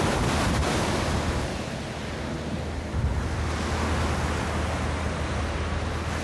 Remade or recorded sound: recorded